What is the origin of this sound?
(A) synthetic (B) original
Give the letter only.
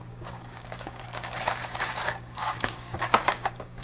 A